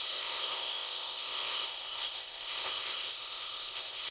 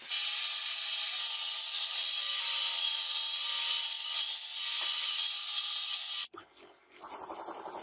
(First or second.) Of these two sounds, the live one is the second